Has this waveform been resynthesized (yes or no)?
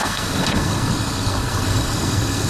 yes